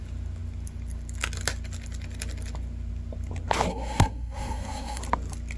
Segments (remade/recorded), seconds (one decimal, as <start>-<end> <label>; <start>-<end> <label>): 0.0-3.7 recorded; 3.7-5.0 remade; 5.0-5.6 recorded

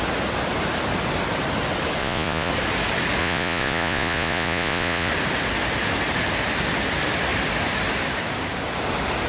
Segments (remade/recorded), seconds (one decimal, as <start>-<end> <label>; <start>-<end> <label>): 0.0-2.0 recorded; 2.0-2.5 remade; 2.5-3.2 recorded; 3.2-5.1 remade; 5.1-9.3 recorded

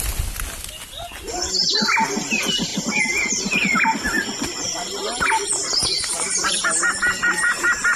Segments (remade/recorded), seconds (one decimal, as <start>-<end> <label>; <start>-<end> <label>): 0.0-2.7 recorded; 2.7-3.4 remade; 3.4-6.1 recorded; 6.1-6.8 remade; 6.8-8.0 recorded

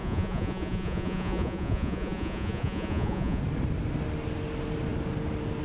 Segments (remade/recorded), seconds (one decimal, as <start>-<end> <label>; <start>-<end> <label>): 0.0-3.4 remade; 3.4-5.6 recorded

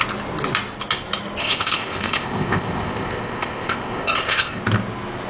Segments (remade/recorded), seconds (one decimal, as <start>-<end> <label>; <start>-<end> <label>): 0.0-1.4 recorded; 1.4-4.6 remade; 4.6-5.3 recorded

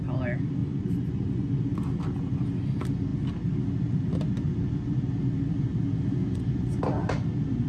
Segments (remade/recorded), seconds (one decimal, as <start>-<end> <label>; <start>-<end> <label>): 0.0-0.6 recorded; 0.6-1.6 remade; 1.6-6.2 recorded; 6.2-6.8 remade; 6.8-7.7 recorded